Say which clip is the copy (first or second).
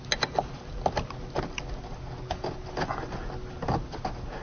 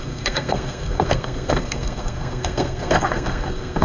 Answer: second